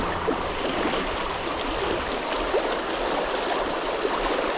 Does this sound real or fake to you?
real